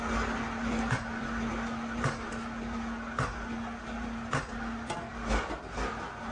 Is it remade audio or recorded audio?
recorded